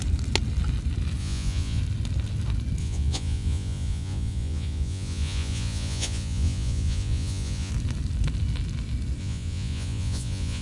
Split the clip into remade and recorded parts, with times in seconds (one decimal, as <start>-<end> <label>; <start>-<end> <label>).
0.0-1.2 recorded; 1.2-1.8 remade; 1.8-2.8 recorded; 2.8-7.7 remade; 7.7-9.2 recorded; 9.2-10.6 remade